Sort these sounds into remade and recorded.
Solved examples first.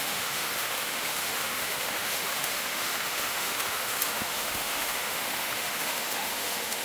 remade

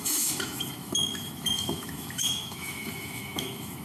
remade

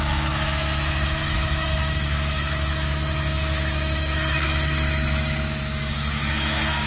remade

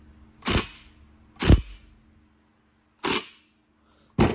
recorded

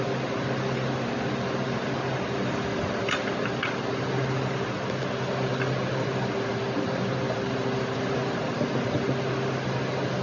recorded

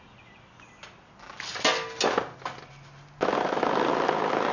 recorded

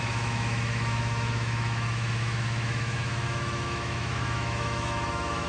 remade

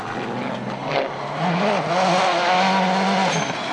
recorded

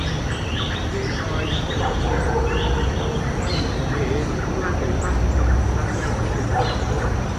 recorded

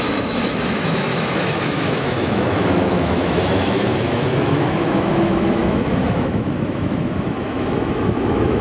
remade